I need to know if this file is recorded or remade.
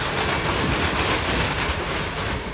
recorded